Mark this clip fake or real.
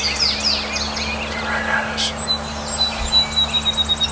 real